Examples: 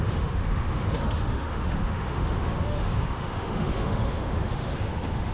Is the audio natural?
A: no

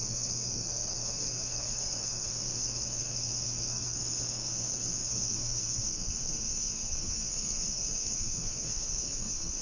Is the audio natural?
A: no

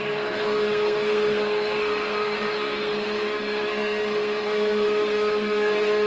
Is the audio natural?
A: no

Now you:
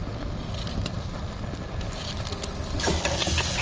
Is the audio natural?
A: yes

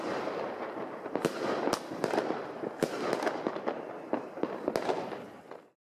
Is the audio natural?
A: yes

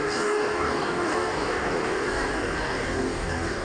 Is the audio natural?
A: no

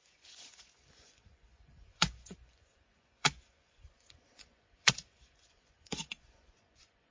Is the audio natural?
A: no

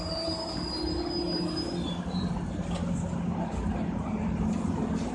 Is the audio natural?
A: yes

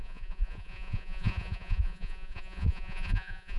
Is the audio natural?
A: no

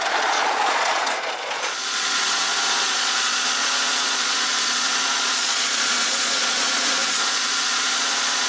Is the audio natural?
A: no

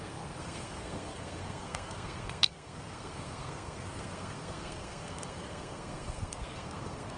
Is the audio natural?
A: no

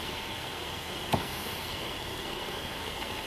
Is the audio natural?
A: no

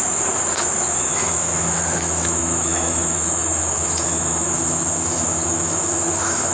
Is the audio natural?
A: no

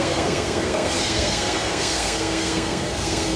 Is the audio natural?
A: no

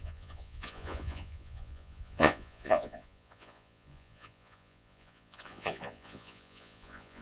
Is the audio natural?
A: no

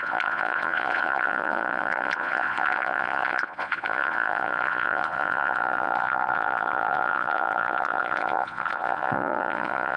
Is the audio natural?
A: no